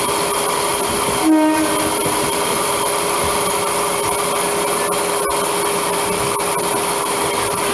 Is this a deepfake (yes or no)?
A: no